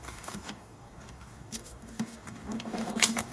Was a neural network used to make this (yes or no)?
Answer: yes